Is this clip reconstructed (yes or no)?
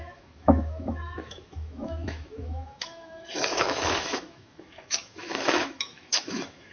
yes